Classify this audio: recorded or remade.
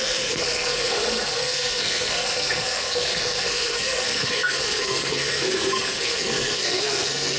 remade